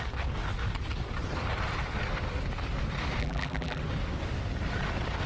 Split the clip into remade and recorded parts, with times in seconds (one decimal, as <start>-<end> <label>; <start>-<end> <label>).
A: 0.0-3.2 recorded; 3.2-3.8 remade; 3.8-5.3 recorded